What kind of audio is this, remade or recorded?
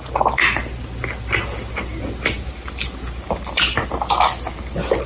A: recorded